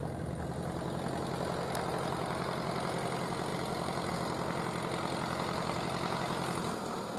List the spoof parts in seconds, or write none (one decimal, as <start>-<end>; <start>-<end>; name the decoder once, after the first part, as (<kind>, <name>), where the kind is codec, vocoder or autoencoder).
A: 3.5-4.1 (vocoder, BigVGAN v2)